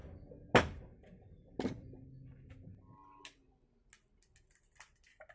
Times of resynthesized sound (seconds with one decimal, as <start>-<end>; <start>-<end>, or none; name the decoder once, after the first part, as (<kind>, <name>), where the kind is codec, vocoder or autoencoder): none